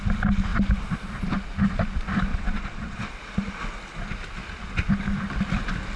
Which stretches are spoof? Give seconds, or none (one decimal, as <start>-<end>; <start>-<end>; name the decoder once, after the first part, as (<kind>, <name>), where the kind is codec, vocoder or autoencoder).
2.3-3.1 (vocoder, Vocos)